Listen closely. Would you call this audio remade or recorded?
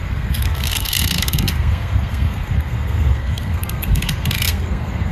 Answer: remade